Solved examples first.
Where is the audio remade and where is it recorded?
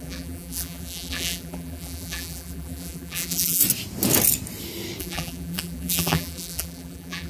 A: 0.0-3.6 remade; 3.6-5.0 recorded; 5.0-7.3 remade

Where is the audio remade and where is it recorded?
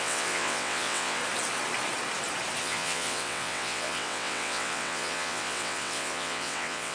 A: 0.0-1.2 remade; 1.2-2.6 recorded; 2.6-6.9 remade